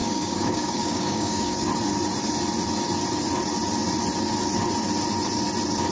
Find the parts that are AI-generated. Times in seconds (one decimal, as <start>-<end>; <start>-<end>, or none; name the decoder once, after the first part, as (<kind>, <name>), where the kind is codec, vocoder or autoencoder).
0.0-1.7 (codec, DAC)